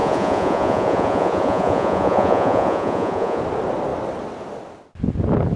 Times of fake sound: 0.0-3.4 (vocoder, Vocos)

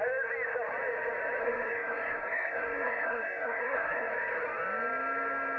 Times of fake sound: 1.4-4.1 (codec, SNAC)

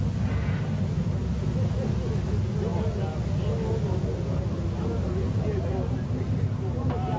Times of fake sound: none

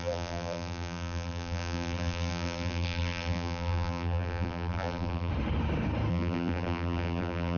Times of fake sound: 0.0-5.3 (vocoder, BigVGAN v2); 6.1-7.6

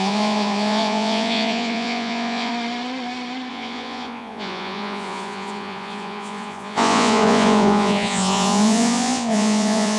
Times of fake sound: 0.0-2.5 (vocoder, Vocos); 3.5-10.0

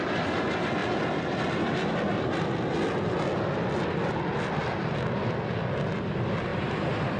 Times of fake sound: 6.5-7.2 (vocoder, BigVGAN v2)

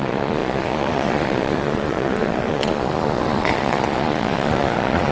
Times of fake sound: 0.0-5.1 (vocoder, Vocos)